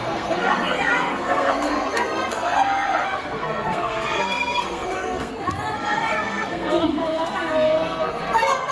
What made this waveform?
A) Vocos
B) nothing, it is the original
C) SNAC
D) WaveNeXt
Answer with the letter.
C